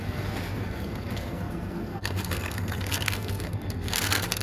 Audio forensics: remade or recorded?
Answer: remade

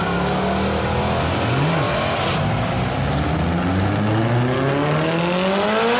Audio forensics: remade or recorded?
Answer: recorded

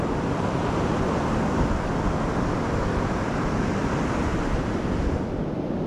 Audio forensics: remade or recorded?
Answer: recorded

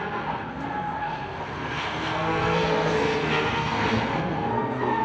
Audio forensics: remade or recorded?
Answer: remade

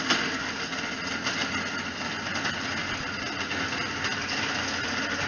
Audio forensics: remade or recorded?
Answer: recorded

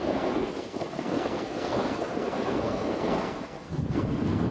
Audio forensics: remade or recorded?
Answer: remade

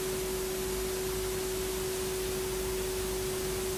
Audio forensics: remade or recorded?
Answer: recorded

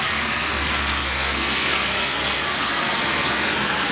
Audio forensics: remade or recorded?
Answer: remade